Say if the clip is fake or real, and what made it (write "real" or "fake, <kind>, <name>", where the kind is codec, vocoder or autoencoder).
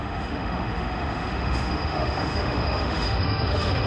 fake, autoencoder, DAC-VAE